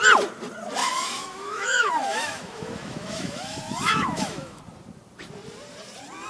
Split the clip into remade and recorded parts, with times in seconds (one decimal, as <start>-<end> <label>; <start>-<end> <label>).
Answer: 0.0-0.8 recorded; 0.8-4.6 remade; 4.6-6.3 recorded

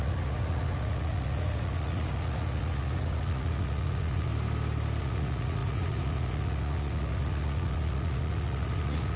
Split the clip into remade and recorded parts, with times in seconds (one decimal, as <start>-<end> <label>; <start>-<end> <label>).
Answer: 0.0-4.3 remade; 4.3-5.0 recorded; 5.0-9.2 remade

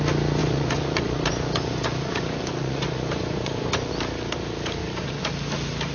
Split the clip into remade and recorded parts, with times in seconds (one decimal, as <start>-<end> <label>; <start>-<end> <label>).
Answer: 0.0-0.4 recorded; 0.4-3.9 remade; 3.9-4.8 recorded; 4.8-5.3 remade; 5.3-5.9 recorded

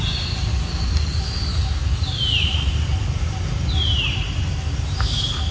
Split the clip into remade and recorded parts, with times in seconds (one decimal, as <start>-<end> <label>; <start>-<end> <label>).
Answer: 0.0-5.5 recorded

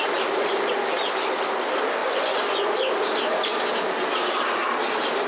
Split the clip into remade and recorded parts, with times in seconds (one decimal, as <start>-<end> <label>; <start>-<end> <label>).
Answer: 0.0-2.0 recorded; 2.0-2.7 remade; 2.7-5.3 recorded

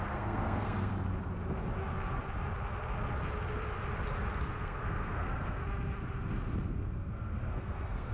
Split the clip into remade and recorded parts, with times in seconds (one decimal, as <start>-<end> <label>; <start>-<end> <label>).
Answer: 0.0-0.9 remade; 0.9-4.4 recorded; 4.4-5.6 remade; 5.6-6.7 recorded; 6.7-8.1 remade